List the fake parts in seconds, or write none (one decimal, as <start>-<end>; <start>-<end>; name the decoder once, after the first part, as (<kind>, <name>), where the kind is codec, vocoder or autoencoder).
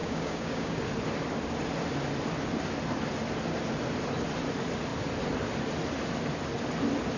0.0-0.8 (codec, DAC)